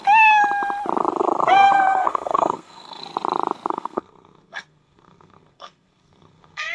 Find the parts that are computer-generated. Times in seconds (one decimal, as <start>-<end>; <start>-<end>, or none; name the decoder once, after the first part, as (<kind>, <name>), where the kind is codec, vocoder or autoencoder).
1.5-3.0 (codec, SNAC); 3.7-6.7